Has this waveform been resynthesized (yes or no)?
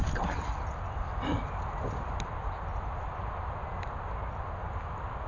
no